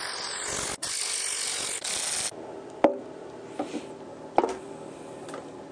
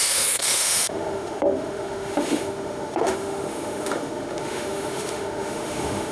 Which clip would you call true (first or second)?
first